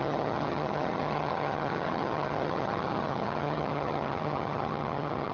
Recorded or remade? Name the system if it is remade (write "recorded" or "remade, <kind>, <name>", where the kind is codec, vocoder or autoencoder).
remade, vocoder, HiFi-GAN